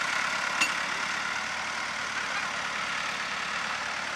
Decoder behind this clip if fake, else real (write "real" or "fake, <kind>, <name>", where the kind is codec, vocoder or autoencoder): real